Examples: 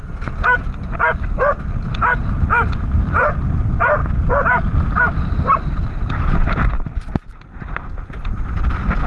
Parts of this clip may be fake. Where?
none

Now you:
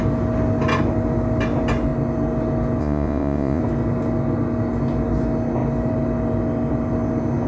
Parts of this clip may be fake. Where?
2.8-3.6

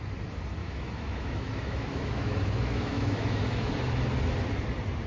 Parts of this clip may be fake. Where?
0.6-3.7

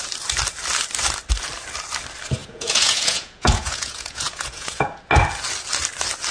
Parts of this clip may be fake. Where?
2.4-5.0

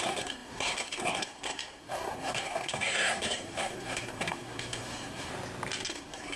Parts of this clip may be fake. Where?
0.0-5.3; 5.9-6.4

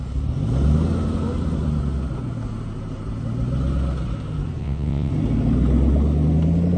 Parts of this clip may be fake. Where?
4.6-5.1

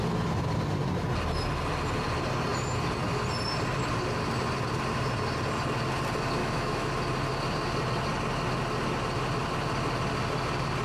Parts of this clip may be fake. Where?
6.4-6.9

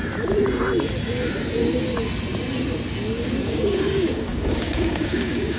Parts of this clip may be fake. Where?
3.4-5.6